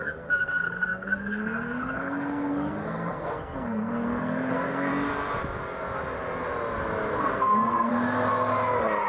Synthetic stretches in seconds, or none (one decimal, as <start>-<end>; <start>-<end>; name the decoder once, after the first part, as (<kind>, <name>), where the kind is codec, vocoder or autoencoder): 0.0-4.9 (codec, SNAC); 7.2-7.9